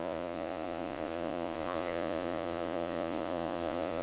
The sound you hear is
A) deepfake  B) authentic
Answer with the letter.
A